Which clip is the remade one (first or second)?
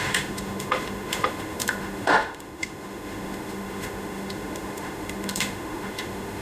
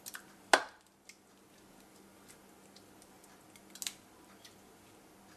first